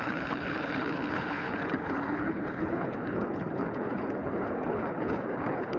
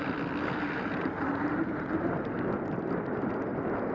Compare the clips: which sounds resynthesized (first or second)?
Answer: first